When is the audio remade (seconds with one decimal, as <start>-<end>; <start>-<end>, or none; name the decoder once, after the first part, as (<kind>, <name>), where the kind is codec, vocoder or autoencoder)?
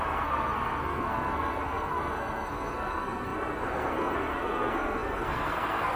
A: 0.0-6.0 (codec, SNAC)